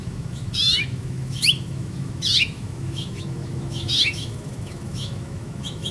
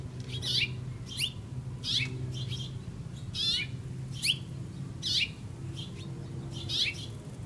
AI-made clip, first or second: first